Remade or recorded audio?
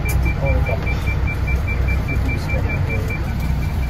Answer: recorded